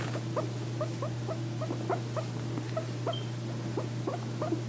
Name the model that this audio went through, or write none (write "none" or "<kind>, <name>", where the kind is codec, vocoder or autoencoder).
none